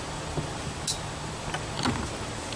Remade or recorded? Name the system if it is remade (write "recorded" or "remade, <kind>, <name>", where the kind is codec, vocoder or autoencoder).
recorded